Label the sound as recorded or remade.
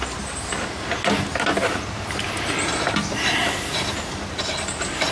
recorded